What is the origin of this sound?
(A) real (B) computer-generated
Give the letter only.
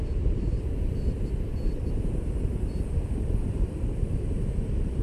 B